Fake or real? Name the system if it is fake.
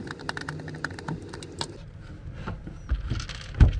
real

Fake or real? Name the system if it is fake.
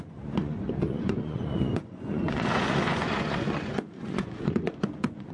fake, vocoder, Vocos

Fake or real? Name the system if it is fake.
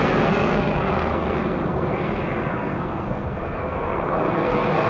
fake, codec, SNAC